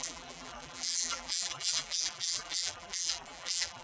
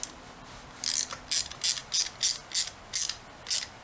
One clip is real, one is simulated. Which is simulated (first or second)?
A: first